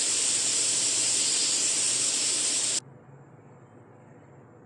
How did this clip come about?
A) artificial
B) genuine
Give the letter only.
B